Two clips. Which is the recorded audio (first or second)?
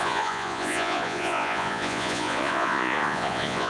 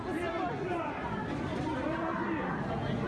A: second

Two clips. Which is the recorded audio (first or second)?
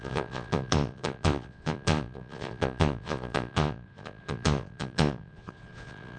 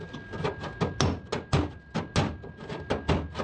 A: second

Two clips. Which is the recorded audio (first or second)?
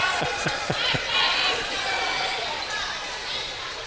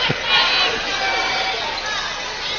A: second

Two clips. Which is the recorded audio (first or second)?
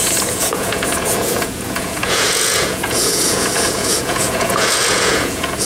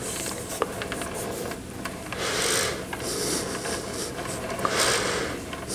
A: second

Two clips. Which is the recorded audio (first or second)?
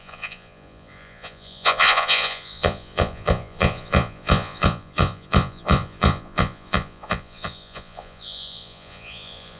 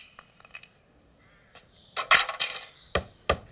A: second